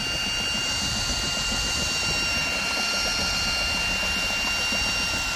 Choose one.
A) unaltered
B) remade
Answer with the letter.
A